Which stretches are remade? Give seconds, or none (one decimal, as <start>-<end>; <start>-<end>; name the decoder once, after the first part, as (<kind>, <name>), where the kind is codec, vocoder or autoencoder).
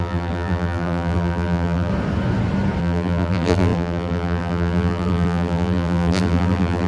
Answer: 0.0-1.9 (vocoder, BigVGAN v2); 2.8-6.9